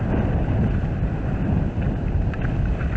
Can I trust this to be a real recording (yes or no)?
yes